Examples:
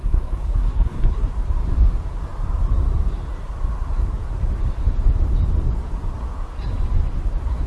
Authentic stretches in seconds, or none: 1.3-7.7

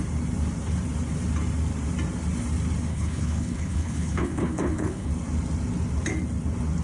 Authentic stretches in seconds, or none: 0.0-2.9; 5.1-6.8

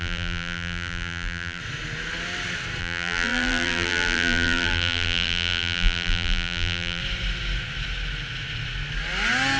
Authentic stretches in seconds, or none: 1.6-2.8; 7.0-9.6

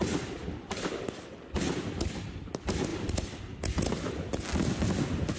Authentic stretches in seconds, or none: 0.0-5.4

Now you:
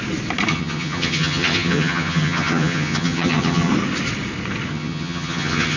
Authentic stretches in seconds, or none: 0.0-0.5; 3.7-4.7

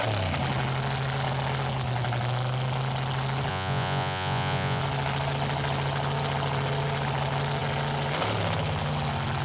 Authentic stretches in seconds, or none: 0.0-3.5; 4.8-9.4